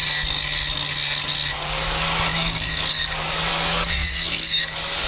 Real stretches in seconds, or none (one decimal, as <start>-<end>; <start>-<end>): 0.0-1.5